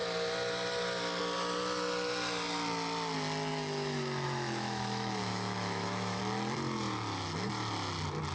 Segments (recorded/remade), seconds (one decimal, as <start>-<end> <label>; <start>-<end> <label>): 0.0-3.5 recorded; 3.5-6.2 remade; 6.2-8.3 recorded